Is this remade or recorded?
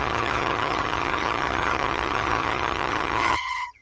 remade